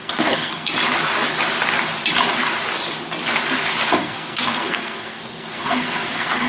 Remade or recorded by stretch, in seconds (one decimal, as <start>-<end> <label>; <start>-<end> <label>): 0.0-0.7 remade; 0.7-4.0 recorded; 4.0-6.5 remade

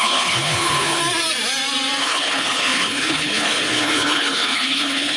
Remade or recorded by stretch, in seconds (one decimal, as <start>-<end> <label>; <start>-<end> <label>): 0.0-1.0 remade; 1.0-2.0 recorded; 2.0-5.2 remade

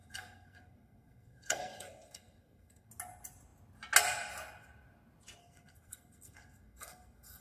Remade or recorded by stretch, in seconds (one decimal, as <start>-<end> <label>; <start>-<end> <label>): 0.0-2.9 remade; 2.9-5.4 recorded; 5.4-7.4 remade

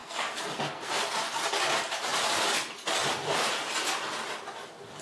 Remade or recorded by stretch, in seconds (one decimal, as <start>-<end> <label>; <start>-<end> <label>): 0.0-1.0 remade; 1.0-5.0 recorded

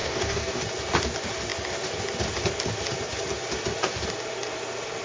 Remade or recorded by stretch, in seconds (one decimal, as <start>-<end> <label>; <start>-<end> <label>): 0.0-0.6 remade; 0.6-5.0 recorded

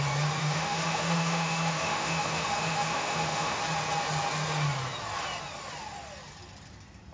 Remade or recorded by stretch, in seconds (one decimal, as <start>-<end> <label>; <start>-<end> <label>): 0.0-0.4 recorded; 0.4-3.6 remade; 3.6-7.1 recorded

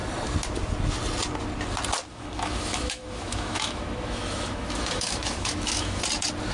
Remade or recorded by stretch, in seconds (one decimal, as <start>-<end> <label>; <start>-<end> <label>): 0.0-2.1 recorded; 2.1-6.0 remade; 6.0-6.5 recorded